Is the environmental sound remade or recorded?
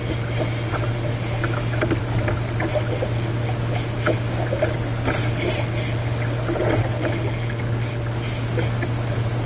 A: recorded